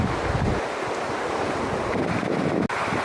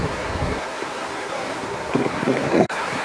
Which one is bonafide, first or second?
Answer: first